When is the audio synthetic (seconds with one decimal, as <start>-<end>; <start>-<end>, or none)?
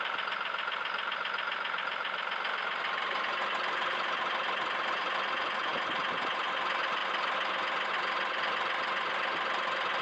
none